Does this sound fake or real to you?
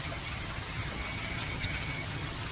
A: fake